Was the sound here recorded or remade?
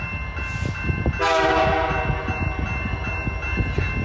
recorded